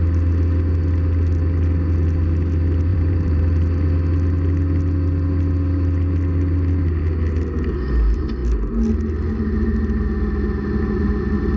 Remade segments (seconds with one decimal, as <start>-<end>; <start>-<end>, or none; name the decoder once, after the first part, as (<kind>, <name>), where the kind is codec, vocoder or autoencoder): 2.9-3.4 (vocoder, BigVGAN v2)